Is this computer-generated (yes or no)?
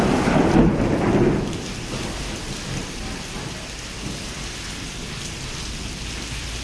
no